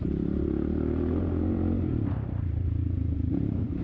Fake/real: fake